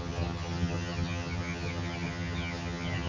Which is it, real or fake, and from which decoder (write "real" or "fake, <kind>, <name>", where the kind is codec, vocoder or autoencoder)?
fake, vocoder, HiFi-GAN